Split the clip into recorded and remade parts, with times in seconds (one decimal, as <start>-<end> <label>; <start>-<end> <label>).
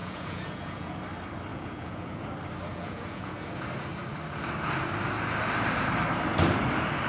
0.0-1.0 remade; 1.0-1.5 recorded; 1.5-2.2 remade; 2.2-2.7 recorded; 2.7-3.5 remade; 3.5-7.1 recorded